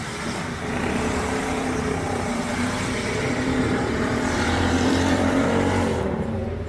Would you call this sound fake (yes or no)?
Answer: yes